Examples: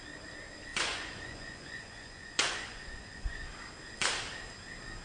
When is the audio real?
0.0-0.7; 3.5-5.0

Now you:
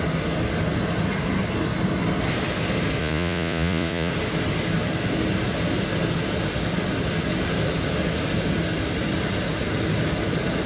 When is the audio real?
0.0-3.0; 4.1-10.7

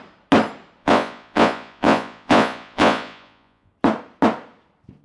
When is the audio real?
0.0-0.8; 3.7-5.0

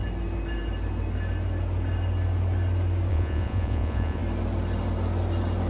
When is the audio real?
0.0-3.1; 4.2-5.7

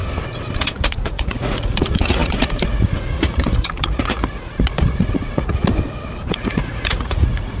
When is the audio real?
0.0-0.6; 5.6-6.3